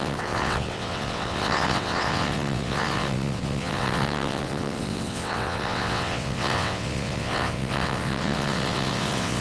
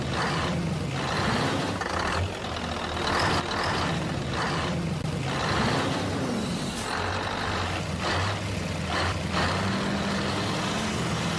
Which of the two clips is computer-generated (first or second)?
first